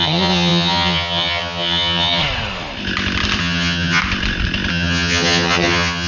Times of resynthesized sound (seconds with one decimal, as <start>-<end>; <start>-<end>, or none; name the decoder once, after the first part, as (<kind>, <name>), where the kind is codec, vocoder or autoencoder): 0.0-2.2 (vocoder, HiFi-GAN); 3.4-4.0; 4.7-6.1